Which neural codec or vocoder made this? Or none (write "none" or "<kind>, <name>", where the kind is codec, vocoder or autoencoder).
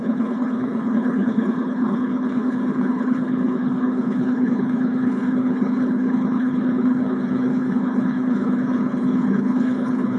codec, HILCodec